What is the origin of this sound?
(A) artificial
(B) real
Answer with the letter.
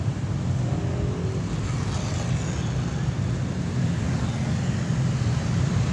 B